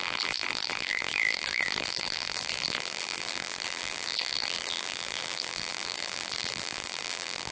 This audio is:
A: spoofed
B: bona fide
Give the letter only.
A